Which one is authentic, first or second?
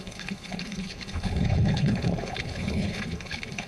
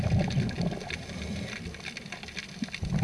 second